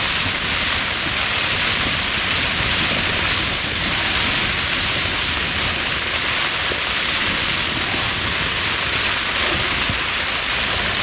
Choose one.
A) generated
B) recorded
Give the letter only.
B